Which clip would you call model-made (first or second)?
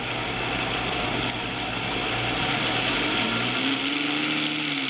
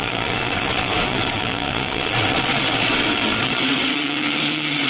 second